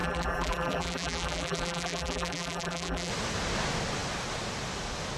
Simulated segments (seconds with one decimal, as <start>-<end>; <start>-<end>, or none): 0.0-3.1

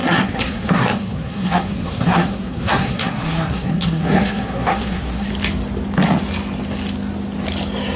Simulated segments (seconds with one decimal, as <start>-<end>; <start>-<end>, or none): 0.0-5.3

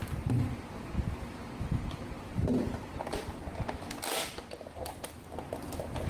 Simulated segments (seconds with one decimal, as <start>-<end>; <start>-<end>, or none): 0.0-3.5; 4.2-6.1